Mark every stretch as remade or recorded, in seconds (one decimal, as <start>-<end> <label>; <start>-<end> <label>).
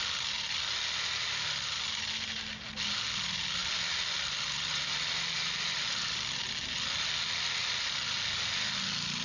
0.0-9.2 recorded